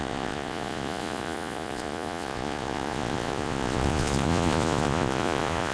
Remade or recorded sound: remade